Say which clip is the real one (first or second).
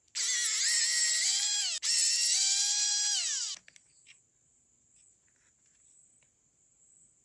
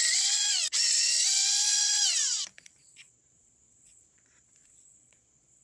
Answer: first